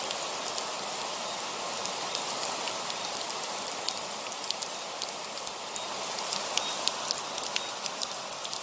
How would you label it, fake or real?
real